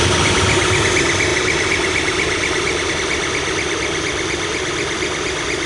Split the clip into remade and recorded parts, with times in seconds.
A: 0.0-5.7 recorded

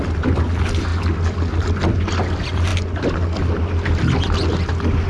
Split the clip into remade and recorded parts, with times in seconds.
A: 0.0-5.1 recorded